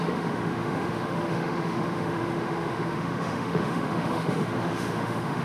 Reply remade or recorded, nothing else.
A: remade